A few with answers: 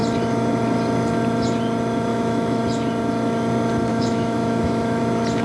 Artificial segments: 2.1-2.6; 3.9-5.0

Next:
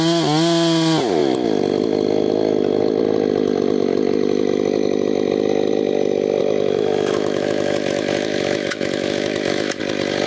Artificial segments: 6.4-9.8